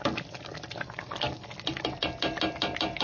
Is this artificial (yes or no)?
no